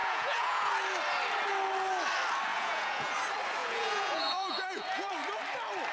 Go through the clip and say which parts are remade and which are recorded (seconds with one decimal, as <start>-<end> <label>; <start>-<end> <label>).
0.0-0.7 remade; 0.7-2.5 recorded; 2.5-3.1 remade; 3.1-3.6 recorded; 3.6-5.1 remade; 5.1-5.9 recorded